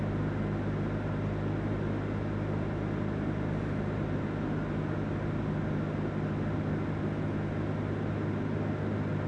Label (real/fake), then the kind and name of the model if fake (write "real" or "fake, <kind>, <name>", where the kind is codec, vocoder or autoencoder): real